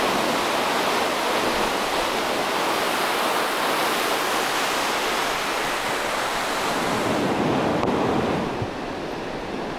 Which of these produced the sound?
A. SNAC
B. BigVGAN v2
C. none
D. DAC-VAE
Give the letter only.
C